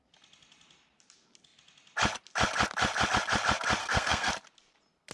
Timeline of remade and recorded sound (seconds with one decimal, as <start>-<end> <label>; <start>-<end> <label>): 0.0-3.8 recorded; 3.8-4.3 remade; 4.3-5.1 recorded